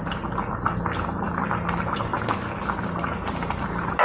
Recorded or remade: recorded